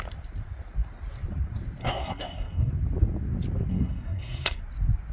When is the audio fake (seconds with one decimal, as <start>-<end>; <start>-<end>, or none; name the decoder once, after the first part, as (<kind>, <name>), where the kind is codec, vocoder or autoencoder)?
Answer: 1.8-2.7 (codec, SNAC); 3.7-4.6